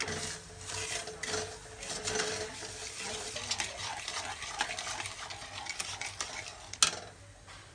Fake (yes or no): no